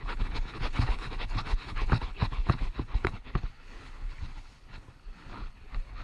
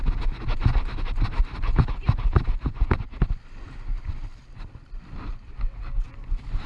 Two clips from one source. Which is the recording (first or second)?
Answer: second